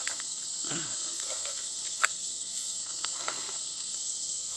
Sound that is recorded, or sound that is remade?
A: remade